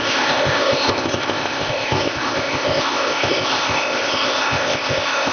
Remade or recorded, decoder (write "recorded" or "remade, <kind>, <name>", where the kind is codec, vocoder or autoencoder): remade, codec, ZipCodec